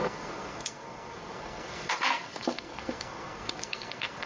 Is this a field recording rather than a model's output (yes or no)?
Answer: no